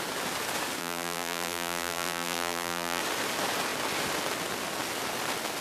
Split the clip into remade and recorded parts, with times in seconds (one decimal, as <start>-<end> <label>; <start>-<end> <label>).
0.0-0.8 recorded; 0.8-3.0 remade; 3.0-5.6 recorded